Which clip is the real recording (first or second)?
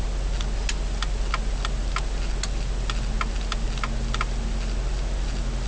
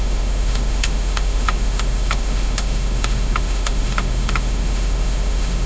first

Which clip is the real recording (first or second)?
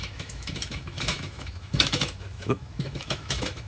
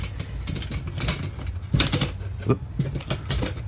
second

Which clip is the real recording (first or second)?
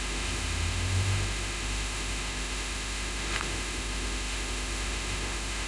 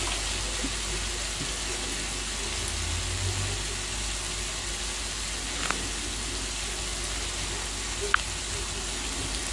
second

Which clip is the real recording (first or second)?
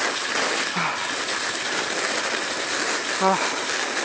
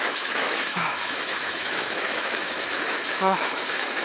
first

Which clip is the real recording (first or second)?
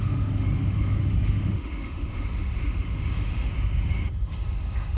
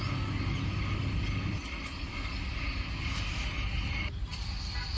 second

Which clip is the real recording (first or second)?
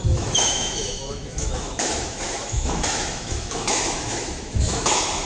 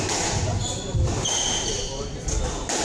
second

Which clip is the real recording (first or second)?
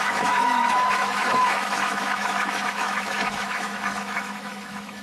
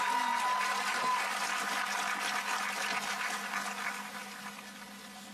second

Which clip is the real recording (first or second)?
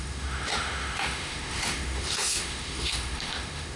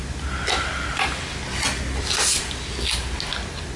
second